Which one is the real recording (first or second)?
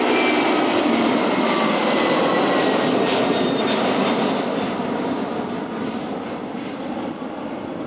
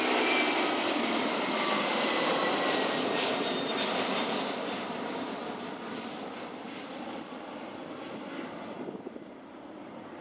first